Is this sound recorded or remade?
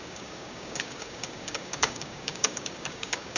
remade